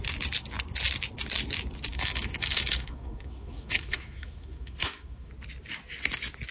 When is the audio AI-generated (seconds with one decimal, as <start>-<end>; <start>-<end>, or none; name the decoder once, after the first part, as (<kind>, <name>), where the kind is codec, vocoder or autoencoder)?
1.9-5.3 (autoencoder, DAC-VAE)